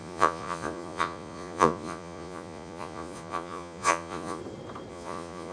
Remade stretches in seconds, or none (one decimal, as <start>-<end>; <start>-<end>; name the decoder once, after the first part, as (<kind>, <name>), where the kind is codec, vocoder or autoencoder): 0.0-4.4 (vocoder, Vocos); 4.9-5.5